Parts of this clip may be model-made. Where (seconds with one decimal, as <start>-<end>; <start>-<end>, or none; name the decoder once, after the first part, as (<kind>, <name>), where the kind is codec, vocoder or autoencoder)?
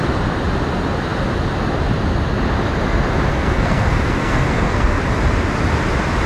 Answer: 3.3-5.0 (codec, SNAC)